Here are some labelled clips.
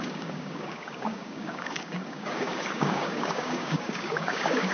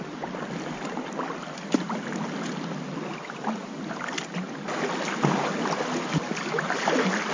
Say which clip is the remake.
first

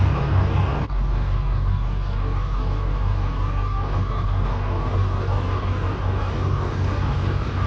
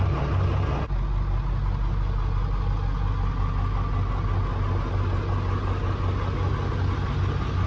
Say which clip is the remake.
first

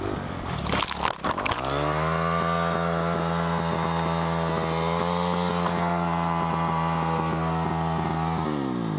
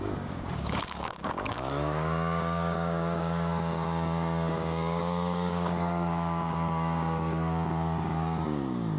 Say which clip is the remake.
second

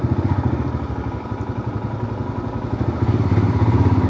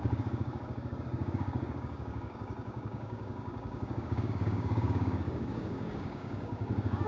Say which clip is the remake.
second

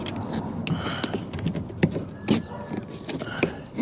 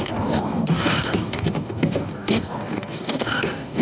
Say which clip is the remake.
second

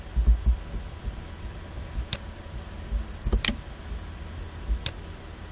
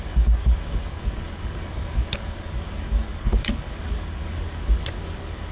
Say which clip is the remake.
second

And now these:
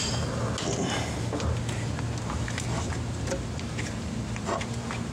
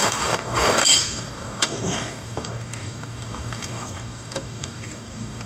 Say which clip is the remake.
second